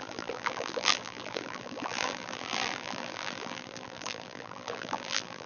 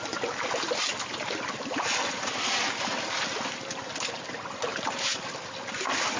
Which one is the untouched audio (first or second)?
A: second